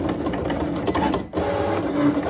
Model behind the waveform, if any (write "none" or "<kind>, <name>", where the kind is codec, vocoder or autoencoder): none